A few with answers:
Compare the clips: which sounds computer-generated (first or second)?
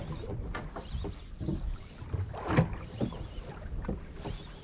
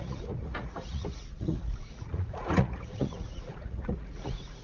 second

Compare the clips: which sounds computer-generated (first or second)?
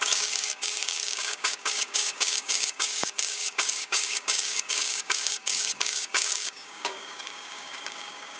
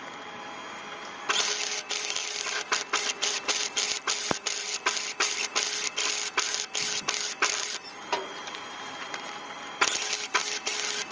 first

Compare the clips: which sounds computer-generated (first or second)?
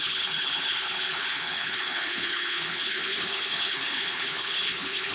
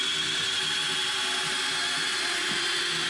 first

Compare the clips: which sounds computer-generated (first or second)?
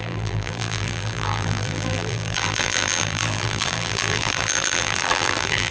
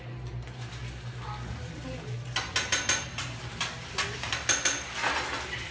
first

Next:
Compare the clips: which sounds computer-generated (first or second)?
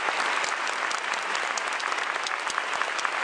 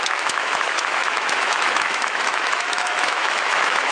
second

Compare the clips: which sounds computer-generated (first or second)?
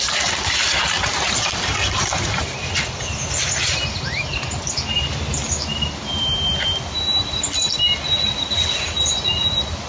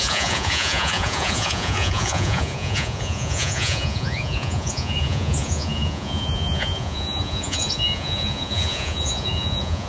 second